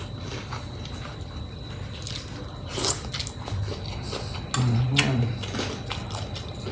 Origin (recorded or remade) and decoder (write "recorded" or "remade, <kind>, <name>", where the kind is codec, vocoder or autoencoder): recorded